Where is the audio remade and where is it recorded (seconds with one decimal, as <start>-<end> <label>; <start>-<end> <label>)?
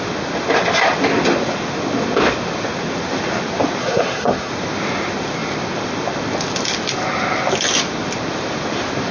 0.0-3.8 recorded; 3.8-4.5 remade; 4.5-9.1 recorded